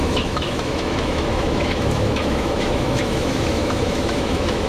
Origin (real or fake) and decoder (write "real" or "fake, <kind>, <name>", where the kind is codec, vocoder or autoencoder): fake, autoencoder, DAC-VAE